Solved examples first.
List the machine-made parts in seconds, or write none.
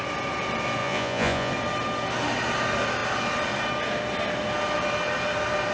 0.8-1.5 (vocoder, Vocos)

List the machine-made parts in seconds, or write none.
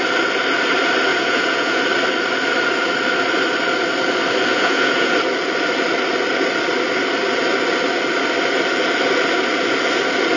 1.1-1.8 (vocoder, Vocos); 4.5-5.1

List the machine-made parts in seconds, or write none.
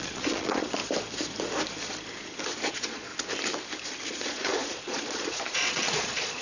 0.0-0.8 (vocoder, Vocos); 2.7-3.1; 4.1-6.4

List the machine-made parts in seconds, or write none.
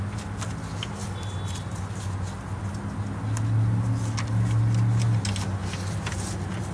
none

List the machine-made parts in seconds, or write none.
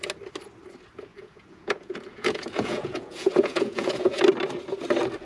1.1-4.2 (vocoder, Vocos)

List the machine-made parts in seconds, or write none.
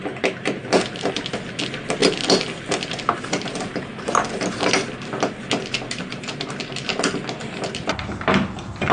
none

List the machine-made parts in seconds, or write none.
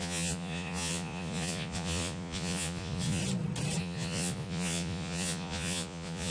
0.0-3.2 (vocoder, Vocos); 3.8-6.3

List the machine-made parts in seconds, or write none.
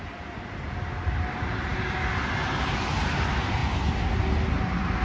none